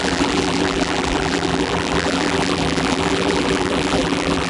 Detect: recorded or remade remade